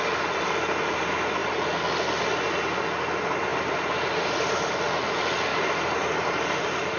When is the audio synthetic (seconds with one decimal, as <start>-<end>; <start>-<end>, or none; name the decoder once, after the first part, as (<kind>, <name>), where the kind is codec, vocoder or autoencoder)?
3.5-4.7 (vocoder, BigVGAN v2); 5.5-7.0